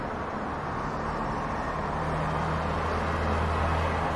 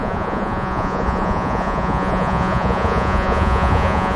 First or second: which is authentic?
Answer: first